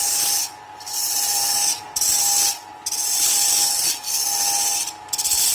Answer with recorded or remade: recorded